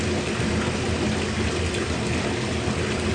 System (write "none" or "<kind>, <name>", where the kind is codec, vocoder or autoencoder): none